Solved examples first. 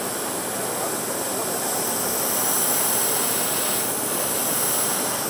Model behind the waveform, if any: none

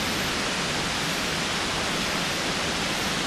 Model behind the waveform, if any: none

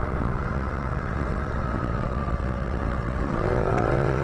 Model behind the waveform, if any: vocoder, WaveNeXt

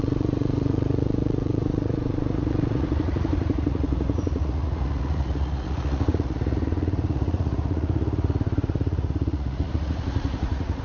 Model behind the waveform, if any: vocoder, Vocos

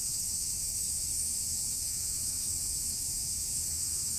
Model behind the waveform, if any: autoencoder, DAC-VAE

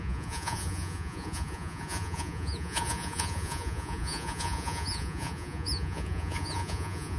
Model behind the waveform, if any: vocoder, Vocos